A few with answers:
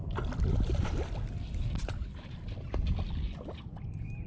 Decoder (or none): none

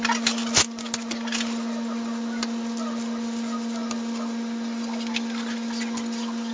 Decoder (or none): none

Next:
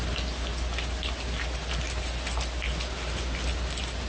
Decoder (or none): none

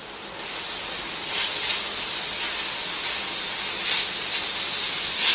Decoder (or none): none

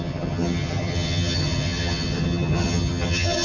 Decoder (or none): vocoder, HiFi-GAN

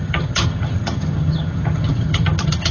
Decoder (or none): vocoder, HiFi-GAN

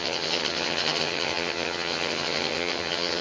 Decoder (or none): vocoder, HiFi-GAN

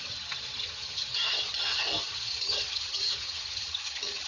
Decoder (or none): vocoder, HiFi-GAN